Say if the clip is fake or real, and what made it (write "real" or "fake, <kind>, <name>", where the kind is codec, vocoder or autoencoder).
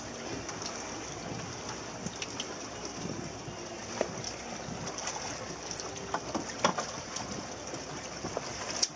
real